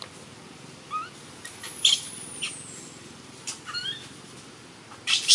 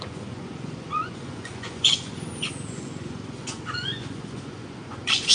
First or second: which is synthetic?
second